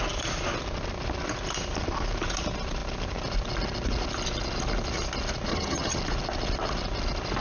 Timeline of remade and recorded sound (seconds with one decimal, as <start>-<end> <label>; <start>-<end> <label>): 0.0-5.5 recorded; 5.5-6.0 remade; 6.0-7.4 recorded